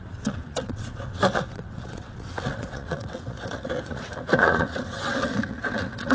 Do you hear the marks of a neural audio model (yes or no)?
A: yes